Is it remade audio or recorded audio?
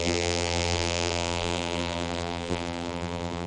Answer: remade